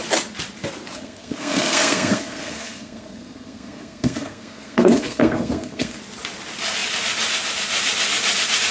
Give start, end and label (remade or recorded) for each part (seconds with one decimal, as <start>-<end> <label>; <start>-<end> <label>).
0.0-0.9 recorded; 0.9-6.0 remade; 6.0-8.7 recorded